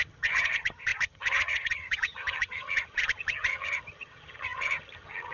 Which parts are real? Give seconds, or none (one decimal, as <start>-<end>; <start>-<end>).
none